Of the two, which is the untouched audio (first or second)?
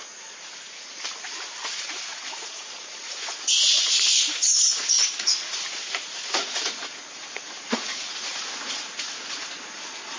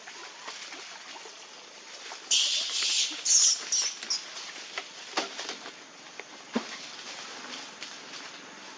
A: second